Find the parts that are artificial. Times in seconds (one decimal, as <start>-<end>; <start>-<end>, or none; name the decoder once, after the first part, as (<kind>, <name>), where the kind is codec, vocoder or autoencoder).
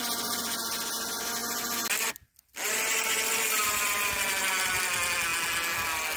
none